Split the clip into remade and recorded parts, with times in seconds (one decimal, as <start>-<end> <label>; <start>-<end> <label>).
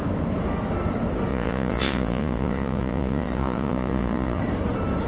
0.0-1.3 recorded; 1.3-4.4 remade; 4.4-5.1 recorded